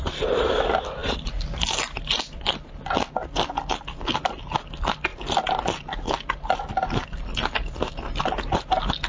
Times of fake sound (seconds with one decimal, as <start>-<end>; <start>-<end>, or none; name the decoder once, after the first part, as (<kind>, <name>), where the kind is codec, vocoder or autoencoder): none